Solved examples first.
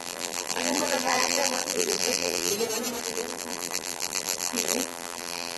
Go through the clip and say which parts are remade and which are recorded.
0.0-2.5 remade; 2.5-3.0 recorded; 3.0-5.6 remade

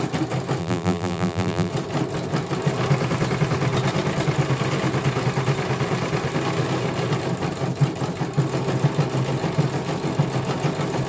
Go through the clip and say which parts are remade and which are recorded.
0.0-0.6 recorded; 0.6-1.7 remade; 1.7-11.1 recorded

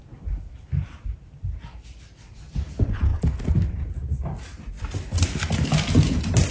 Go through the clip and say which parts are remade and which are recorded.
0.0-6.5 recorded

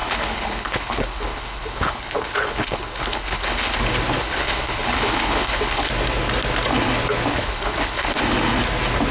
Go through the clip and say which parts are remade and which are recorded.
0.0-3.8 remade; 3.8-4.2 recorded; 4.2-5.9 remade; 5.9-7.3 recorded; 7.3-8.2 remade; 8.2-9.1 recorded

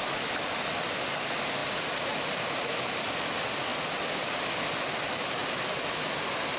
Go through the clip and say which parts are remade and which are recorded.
0.0-6.6 recorded

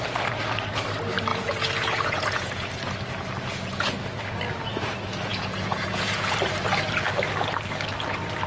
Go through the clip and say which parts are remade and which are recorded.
0.0-1.3 recorded; 1.3-2.7 remade; 2.7-5.3 recorded; 5.3-6.3 remade; 6.3-8.5 recorded